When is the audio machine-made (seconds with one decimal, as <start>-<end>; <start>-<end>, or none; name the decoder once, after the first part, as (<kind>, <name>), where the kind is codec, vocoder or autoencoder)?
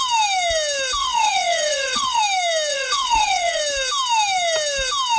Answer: 1.0-2.2 (vocoder, WaveNeXt); 2.7-3.6